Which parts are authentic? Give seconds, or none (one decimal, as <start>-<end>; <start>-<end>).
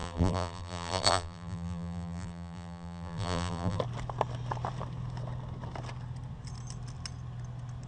3.8-7.9